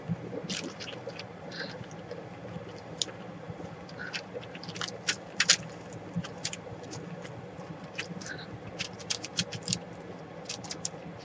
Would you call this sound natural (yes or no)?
yes